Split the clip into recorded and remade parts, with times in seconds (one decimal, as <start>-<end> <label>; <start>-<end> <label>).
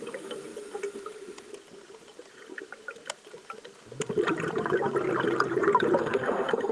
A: 0.0-6.0 recorded; 6.0-6.7 remade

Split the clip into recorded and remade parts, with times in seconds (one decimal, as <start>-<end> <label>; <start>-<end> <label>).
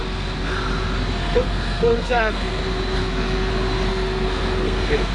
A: 0.0-0.5 remade; 0.5-1.2 recorded; 1.2-2.6 remade; 2.6-3.0 recorded; 3.0-3.5 remade; 3.5-3.9 recorded; 3.9-5.1 remade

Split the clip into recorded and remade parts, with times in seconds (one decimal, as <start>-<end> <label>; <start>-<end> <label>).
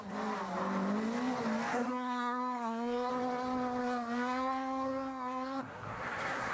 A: 0.0-1.7 recorded; 1.7-3.1 remade; 3.1-3.8 recorded; 3.8-6.5 remade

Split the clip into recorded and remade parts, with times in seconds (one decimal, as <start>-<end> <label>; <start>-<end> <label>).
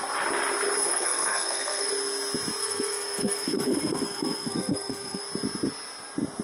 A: 0.0-0.9 recorded; 0.9-1.9 remade; 1.9-2.6 recorded; 2.6-5.2 remade; 5.2-6.4 recorded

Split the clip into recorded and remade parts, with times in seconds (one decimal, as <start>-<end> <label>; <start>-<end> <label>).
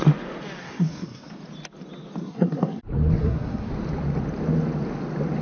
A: 0.0-0.6 recorded; 0.6-1.3 remade; 1.3-2.2 recorded; 2.2-2.8 remade; 2.8-3.2 recorded; 3.2-3.7 remade; 3.7-5.4 recorded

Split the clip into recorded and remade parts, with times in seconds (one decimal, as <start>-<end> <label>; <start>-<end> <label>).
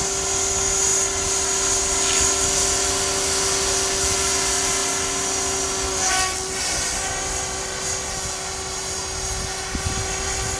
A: 0.0-10.6 recorded